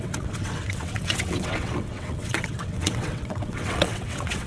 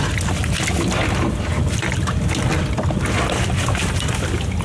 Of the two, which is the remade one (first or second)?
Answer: first